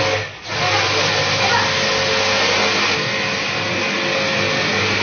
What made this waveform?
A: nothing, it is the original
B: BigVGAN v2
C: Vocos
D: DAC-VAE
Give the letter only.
A